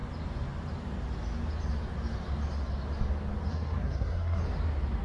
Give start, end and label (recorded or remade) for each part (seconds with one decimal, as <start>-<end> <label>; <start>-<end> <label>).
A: 0.0-3.5 recorded; 3.5-4.4 remade; 4.4-5.0 recorded